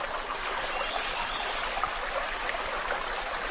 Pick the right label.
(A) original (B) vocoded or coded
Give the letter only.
A